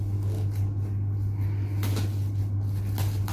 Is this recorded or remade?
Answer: recorded